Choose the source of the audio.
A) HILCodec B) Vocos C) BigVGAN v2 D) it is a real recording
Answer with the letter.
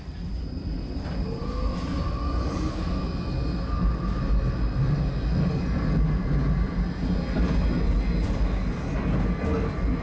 D